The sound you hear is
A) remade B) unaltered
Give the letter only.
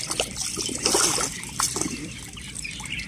A